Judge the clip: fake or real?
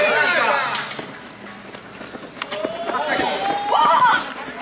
real